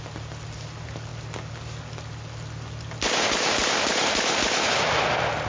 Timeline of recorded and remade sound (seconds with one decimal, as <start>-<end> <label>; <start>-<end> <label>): 0.0-5.5 recorded